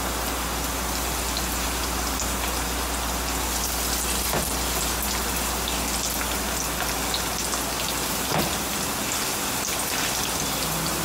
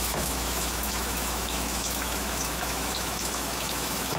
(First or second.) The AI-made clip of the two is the second